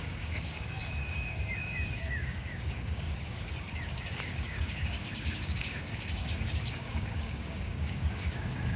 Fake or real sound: fake